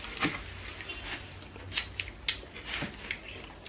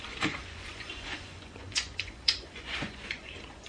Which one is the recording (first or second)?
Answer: first